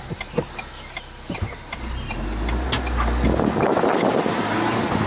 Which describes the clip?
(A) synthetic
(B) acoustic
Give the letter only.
B